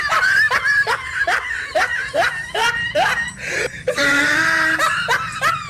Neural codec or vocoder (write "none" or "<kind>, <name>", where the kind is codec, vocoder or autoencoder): vocoder, BigVGAN v2